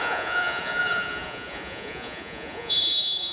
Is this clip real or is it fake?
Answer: fake